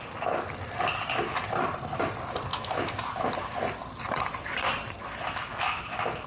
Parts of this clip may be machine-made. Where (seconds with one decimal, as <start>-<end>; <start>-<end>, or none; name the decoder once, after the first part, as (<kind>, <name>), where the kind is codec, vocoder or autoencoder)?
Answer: 2.5-3.3 (autoencoder, DAC-VAE); 5.5-6.3